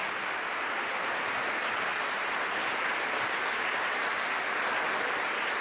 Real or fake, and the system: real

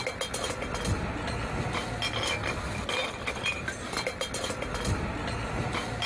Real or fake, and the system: real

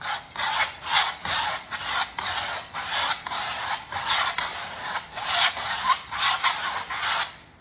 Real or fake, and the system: real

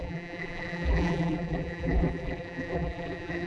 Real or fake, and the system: fake, vocoder, BigVGAN v2